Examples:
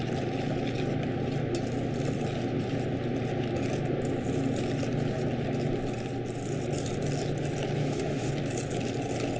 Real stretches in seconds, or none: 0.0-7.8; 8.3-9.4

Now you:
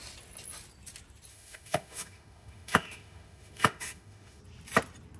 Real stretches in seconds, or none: 0.0-1.3; 4.4-5.2

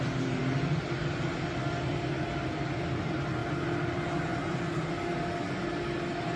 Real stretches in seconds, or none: 0.0-6.4

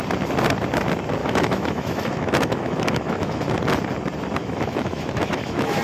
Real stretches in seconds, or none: 0.0-1.2; 3.4-4.4

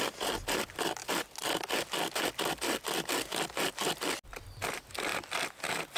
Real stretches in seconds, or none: 0.0-6.0